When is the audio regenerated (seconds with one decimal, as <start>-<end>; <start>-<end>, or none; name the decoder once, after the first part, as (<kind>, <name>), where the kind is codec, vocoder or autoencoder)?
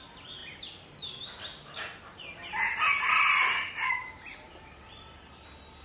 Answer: none